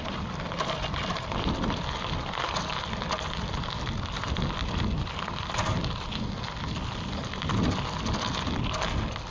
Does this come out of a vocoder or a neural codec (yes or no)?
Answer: no